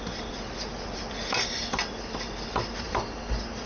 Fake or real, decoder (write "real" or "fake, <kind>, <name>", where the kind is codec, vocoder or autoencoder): real